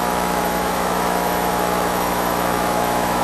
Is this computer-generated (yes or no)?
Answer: yes